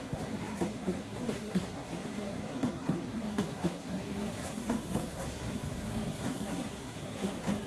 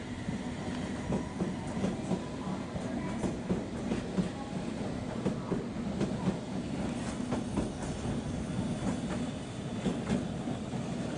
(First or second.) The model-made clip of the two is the first